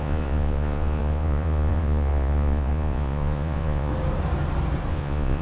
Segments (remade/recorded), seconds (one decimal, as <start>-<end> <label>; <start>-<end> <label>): 0.0-3.9 remade; 3.9-4.9 recorded; 4.9-5.4 remade

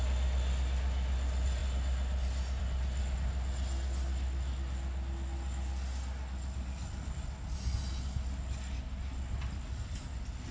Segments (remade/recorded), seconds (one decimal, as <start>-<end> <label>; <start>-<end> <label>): 0.0-10.5 recorded